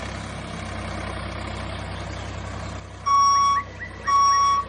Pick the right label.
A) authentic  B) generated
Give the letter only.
A